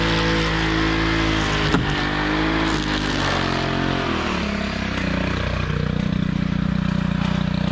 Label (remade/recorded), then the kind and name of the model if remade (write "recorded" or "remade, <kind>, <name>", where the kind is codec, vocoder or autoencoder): recorded